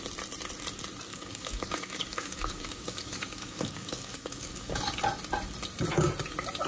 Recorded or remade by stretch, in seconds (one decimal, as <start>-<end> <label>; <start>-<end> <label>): 0.0-1.1 recorded; 1.1-4.8 remade; 4.8-6.7 recorded